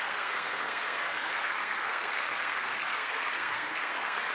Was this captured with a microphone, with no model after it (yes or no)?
no